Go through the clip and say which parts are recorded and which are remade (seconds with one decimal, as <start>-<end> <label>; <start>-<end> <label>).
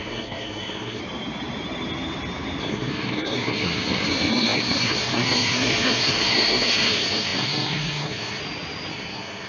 0.0-1.0 remade; 1.0-2.6 recorded; 2.6-8.4 remade; 8.4-8.9 recorded; 8.9-9.5 remade